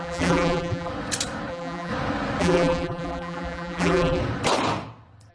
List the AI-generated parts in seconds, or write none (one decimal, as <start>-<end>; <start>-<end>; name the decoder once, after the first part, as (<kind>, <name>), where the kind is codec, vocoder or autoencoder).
0.0-0.9 (vocoder, BigVGAN v2); 1.5-1.9; 2.4-4.2